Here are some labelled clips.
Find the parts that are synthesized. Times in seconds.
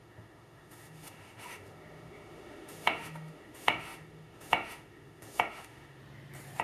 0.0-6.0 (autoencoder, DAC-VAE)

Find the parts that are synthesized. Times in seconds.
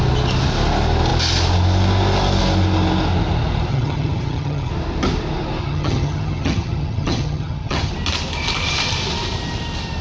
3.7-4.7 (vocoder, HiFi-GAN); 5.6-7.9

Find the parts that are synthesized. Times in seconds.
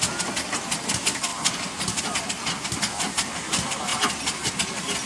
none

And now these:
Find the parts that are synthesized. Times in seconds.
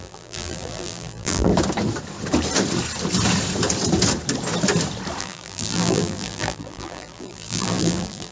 0.0-1.5 (vocoder, BigVGAN v2); 5.2-8.3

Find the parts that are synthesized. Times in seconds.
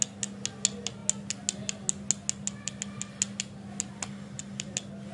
none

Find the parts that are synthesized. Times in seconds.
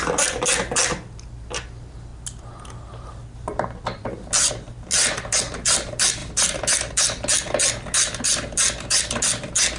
none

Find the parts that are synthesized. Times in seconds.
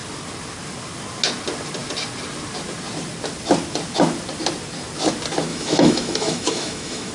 5.5-7.1 (autoencoder, DAC-VAE)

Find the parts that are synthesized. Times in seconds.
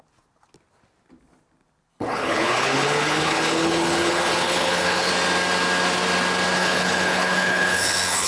1.9-5.1 (codec, HILCodec); 6.6-8.3